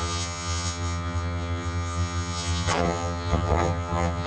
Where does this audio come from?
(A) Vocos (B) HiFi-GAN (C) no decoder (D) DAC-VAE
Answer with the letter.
B